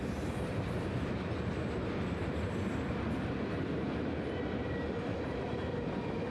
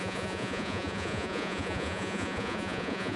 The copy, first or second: second